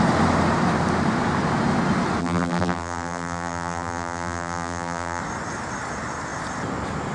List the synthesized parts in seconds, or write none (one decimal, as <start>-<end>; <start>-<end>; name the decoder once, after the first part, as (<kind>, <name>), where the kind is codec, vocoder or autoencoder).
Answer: 2.2-5.2 (vocoder, BigVGAN v2)